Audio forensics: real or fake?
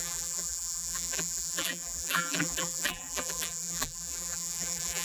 fake